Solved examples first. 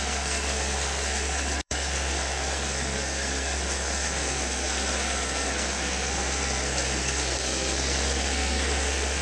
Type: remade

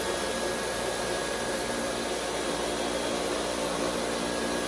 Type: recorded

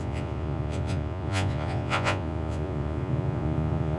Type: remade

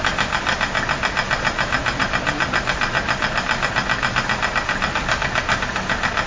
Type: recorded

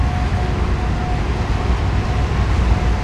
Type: recorded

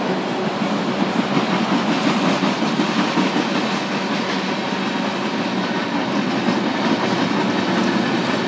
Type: recorded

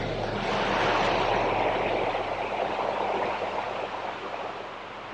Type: recorded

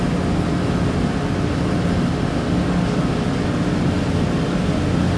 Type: recorded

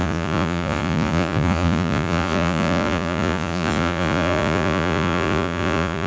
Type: remade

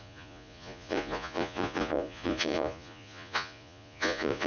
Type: remade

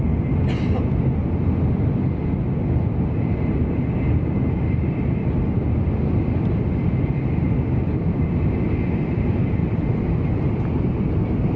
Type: recorded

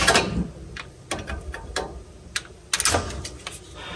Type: recorded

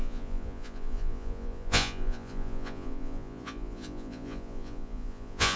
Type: remade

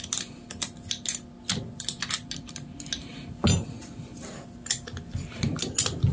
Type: recorded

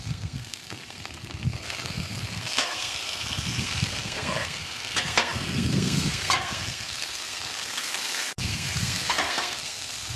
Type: remade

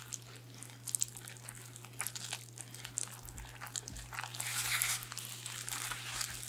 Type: recorded